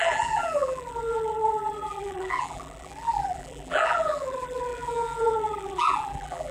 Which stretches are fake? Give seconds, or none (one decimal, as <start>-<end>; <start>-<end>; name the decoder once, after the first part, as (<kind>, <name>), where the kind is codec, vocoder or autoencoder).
0.0-6.5 (vocoder, BigVGAN v2)